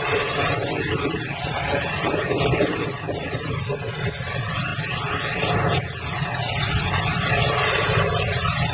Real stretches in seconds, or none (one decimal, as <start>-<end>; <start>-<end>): 4.7-6.8